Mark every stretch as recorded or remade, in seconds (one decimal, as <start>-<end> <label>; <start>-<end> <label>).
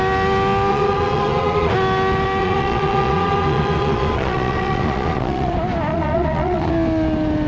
0.0-0.7 recorded; 0.7-1.7 remade; 1.7-2.4 recorded; 2.4-5.5 remade; 5.5-5.9 recorded; 5.9-6.7 remade; 6.7-7.5 recorded